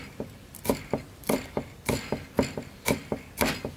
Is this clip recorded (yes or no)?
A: yes